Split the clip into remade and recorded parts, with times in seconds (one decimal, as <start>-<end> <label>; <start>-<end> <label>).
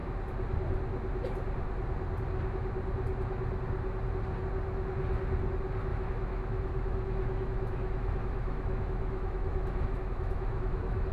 0.0-5.9 recorded; 5.9-11.1 remade